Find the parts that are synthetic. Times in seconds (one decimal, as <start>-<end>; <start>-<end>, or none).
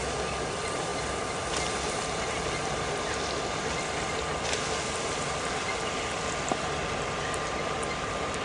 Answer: none